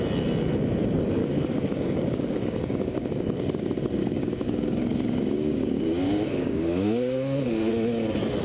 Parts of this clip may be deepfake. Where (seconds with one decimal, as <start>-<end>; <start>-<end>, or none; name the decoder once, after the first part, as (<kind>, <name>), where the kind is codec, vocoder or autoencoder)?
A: 1.2-3.6 (codec, DAC); 4.0-7.7